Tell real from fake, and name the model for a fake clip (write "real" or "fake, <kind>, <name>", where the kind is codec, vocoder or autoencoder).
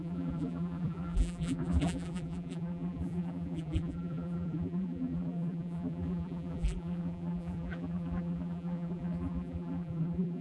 fake, vocoder, BigVGAN v2